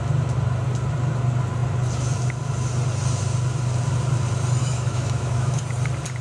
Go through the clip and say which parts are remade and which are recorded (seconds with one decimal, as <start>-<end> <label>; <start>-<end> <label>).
0.0-4.6 recorded; 4.6-5.6 remade; 5.6-6.2 recorded